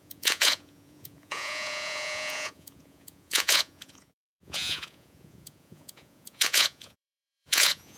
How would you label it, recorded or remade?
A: remade